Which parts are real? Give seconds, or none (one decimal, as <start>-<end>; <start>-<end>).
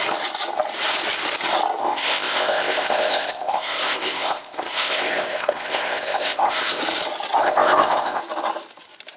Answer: 0.0-1.8; 6.8-7.4; 8.2-9.2